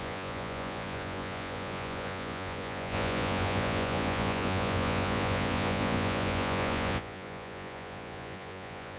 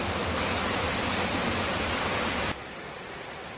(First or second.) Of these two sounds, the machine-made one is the first